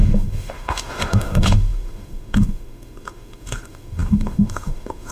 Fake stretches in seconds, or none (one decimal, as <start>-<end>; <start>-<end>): 0.0-5.1